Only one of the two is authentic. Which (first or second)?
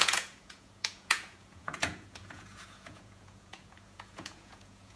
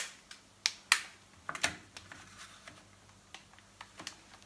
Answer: second